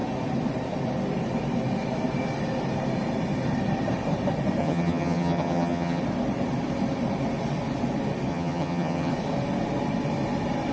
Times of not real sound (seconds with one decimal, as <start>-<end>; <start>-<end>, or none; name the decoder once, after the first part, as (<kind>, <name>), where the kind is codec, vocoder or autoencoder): 4.6-6.0 (vocoder, HiFi-GAN); 8.3-9.1